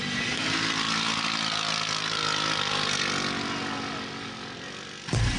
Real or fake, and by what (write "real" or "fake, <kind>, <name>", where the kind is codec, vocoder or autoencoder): real